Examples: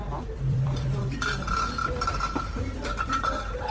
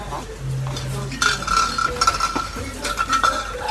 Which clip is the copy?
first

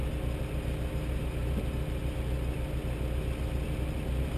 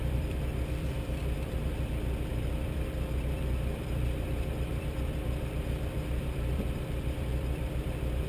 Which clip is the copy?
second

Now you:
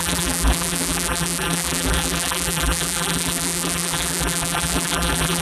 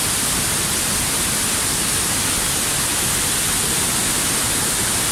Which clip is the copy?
first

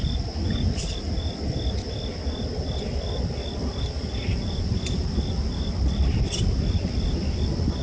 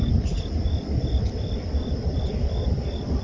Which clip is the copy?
second